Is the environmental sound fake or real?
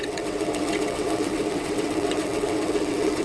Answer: fake